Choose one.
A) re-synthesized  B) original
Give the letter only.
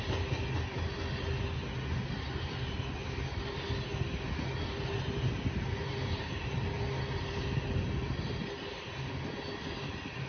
B